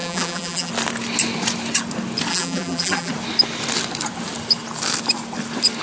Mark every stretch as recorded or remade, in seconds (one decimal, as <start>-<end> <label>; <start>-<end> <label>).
0.0-0.7 remade; 0.7-2.3 recorded; 2.3-3.1 remade; 3.1-5.8 recorded